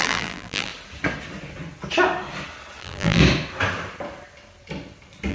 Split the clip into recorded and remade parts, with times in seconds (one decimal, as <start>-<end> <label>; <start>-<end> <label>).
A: 0.0-0.7 remade; 0.7-2.8 recorded; 2.8-3.2 remade; 3.2-5.3 recorded